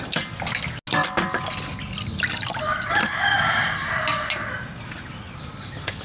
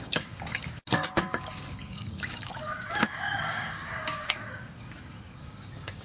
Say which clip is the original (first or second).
first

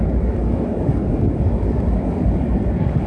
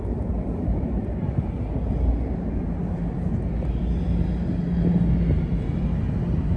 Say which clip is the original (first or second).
second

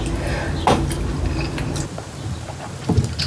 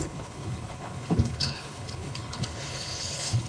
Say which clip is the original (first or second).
first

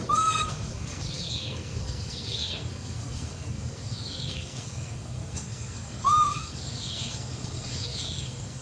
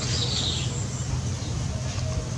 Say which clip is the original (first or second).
second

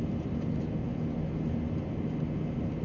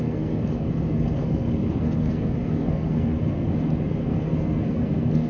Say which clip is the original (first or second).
first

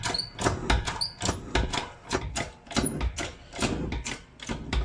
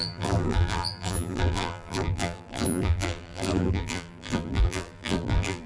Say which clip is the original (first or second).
first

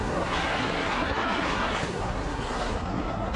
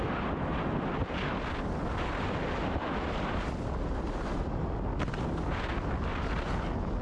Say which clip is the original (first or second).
second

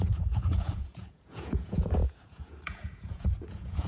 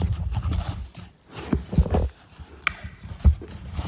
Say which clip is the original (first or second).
second